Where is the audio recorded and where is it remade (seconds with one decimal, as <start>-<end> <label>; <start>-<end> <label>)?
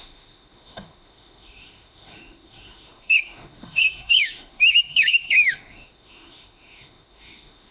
0.0-7.7 remade